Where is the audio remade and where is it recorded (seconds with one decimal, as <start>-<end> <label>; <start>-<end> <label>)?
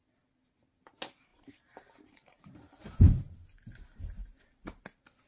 0.0-1.3 recorded; 1.3-4.0 remade; 4.0-5.3 recorded